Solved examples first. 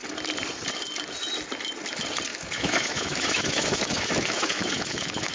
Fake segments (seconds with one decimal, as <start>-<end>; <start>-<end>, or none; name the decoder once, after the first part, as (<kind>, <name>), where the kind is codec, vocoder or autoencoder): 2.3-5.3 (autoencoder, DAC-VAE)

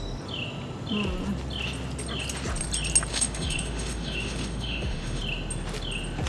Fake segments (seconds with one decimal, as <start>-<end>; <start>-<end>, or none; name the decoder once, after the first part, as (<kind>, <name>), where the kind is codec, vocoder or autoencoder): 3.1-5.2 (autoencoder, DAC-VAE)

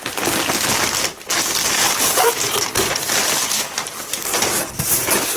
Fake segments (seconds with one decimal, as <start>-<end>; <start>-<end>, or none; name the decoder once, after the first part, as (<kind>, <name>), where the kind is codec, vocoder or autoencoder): none

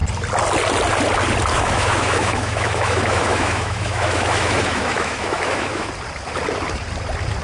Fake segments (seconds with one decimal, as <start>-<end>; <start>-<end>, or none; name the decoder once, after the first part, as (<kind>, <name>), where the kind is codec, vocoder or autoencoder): 1.5-5.9 (autoencoder, DAC-VAE)